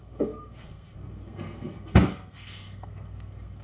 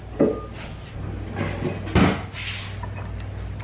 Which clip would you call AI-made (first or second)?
first